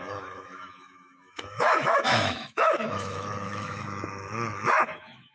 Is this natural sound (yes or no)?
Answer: no